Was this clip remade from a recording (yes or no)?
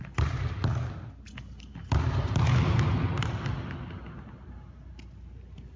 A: no